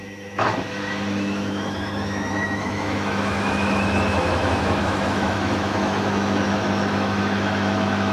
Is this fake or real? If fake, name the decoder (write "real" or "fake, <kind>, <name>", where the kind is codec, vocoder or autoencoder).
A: fake, autoencoder, DAC-VAE